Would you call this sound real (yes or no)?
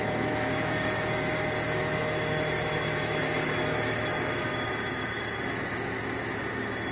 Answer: no